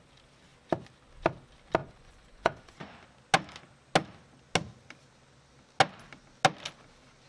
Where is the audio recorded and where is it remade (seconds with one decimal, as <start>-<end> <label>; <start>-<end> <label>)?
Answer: 0.0-1.8 recorded; 1.8-2.9 remade; 2.9-7.3 recorded

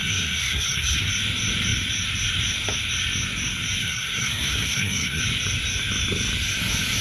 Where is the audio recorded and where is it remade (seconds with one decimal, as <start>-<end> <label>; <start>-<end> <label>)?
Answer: 0.0-1.1 remade; 1.1-3.8 recorded; 3.8-5.2 remade; 5.2-7.0 recorded

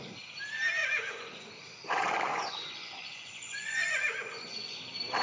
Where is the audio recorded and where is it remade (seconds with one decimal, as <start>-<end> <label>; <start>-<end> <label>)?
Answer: 0.0-0.8 recorded; 0.8-1.5 remade; 1.5-2.3 recorded; 2.3-4.8 remade; 4.8-5.2 recorded

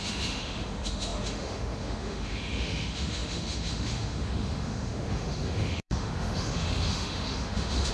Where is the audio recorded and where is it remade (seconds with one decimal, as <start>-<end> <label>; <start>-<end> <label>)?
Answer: 0.0-7.9 remade

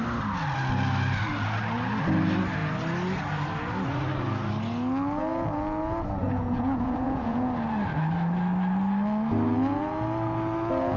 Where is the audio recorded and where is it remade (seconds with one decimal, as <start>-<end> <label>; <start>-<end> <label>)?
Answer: 0.0-6.2 recorded; 6.2-7.5 remade; 7.5-11.0 recorded